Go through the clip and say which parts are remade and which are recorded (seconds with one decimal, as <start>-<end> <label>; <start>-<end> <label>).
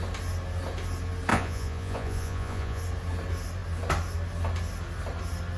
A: 0.0-1.3 recorded; 1.3-2.8 remade; 2.8-5.6 recorded